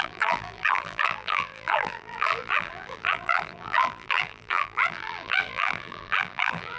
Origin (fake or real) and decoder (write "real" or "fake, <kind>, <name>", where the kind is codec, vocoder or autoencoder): fake, vocoder, BigVGAN v2